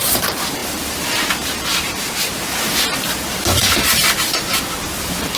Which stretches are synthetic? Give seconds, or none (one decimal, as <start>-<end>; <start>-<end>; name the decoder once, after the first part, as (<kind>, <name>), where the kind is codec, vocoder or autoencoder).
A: 0.0-5.4 (vocoder, BigVGAN v2)